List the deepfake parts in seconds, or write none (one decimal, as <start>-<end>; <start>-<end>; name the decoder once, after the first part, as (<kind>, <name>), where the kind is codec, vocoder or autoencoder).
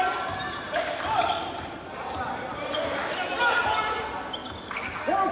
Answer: 0.0-4.4 (vocoder, BigVGAN v2)